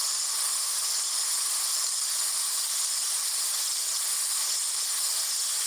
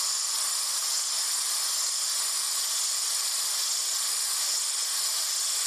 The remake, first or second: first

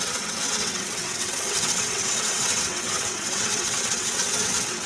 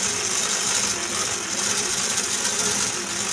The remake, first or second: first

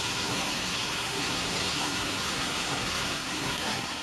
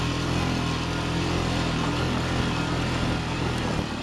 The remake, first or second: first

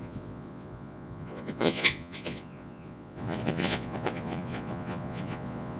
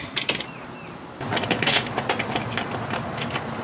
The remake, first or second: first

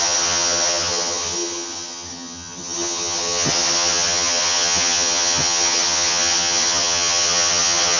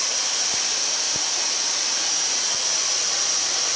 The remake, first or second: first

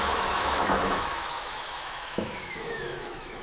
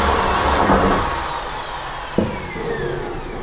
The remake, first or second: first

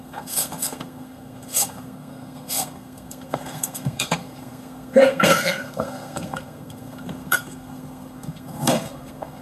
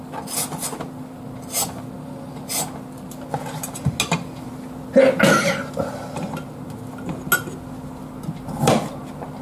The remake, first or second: first